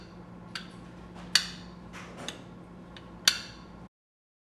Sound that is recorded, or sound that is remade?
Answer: recorded